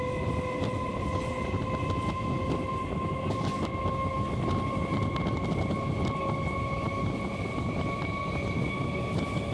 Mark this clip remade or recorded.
recorded